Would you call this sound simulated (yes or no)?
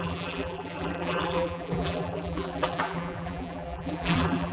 yes